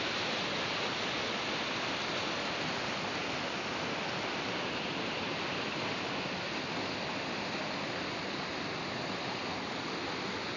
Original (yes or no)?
yes